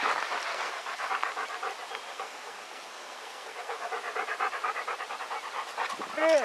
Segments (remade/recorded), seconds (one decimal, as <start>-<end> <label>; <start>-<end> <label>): 0.0-0.5 recorded; 0.5-1.1 remade; 1.1-2.1 recorded; 2.1-3.9 remade; 3.9-6.4 recorded